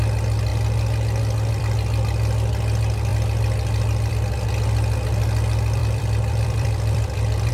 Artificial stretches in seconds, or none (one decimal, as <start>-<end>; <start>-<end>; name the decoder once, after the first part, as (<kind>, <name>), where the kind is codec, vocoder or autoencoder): 5.8-7.5 (vocoder, BigVGAN v2)